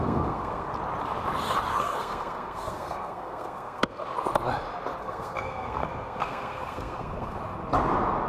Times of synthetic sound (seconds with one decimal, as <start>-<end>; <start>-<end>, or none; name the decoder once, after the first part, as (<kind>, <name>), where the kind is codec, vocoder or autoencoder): 0.0-0.7 (codec, SNAC); 1.8-4.0; 5.0-7.4